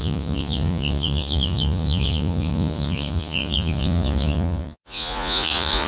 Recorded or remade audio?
remade